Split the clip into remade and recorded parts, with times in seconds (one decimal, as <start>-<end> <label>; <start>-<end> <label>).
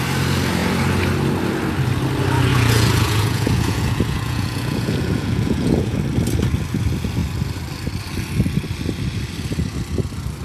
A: 0.0-2.5 recorded; 2.5-6.0 remade; 6.0-10.4 recorded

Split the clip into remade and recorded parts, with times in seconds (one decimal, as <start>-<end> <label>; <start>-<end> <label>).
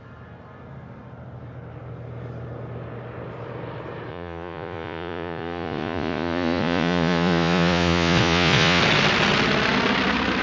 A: 0.0-4.1 recorded; 4.1-8.8 remade; 8.8-10.4 recorded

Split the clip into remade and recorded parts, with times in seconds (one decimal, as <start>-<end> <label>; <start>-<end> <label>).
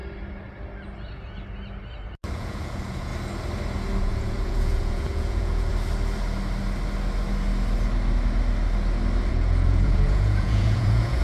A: 0.0-2.3 recorded; 2.3-3.1 remade; 3.1-4.0 recorded; 4.0-5.7 remade; 5.7-9.3 recorded; 9.3-11.2 remade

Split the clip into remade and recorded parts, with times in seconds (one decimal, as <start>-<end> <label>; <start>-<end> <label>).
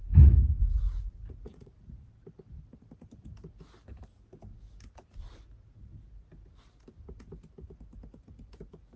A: 0.0-1.9 remade; 1.9-9.0 recorded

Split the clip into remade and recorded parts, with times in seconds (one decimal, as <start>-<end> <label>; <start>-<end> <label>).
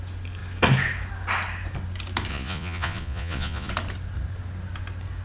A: 0.0-2.3 recorded; 2.3-3.7 remade; 3.7-5.2 recorded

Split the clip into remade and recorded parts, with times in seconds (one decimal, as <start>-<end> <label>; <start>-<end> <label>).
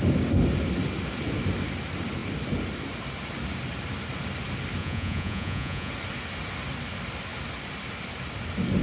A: 0.0-4.8 recorded; 4.8-5.9 remade; 5.9-8.8 recorded